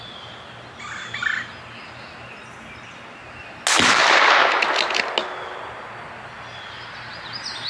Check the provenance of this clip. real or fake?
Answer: real